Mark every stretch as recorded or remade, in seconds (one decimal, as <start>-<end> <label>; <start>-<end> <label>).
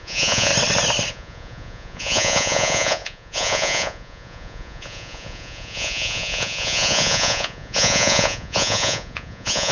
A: 0.0-0.5 remade; 0.5-1.1 recorded; 1.1-9.7 remade